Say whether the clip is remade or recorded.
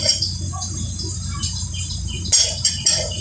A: recorded